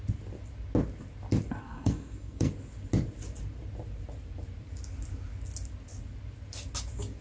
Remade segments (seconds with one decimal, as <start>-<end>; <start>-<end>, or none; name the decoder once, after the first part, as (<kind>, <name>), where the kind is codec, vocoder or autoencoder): 1.6-2.5 (codec, SNAC)